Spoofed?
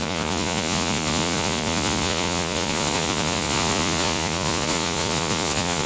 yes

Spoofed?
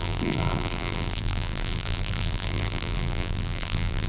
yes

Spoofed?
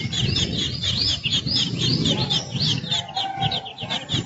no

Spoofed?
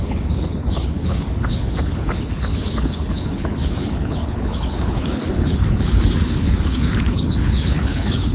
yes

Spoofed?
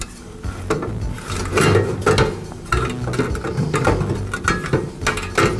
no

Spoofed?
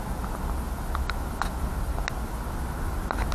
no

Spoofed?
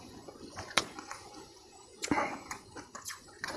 yes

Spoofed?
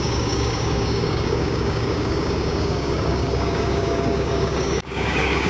yes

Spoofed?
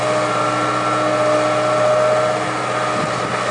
no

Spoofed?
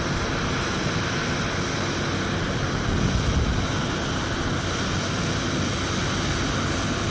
no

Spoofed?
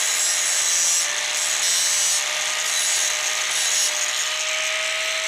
no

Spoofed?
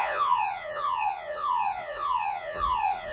yes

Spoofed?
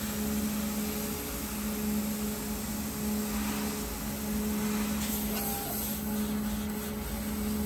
no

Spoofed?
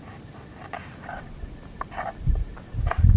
no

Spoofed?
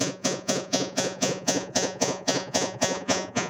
yes